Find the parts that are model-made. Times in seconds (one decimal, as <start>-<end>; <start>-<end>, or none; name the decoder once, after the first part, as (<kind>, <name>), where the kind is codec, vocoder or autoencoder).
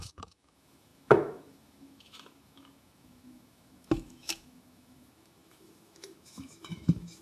0.0-7.2 (autoencoder, DAC-VAE)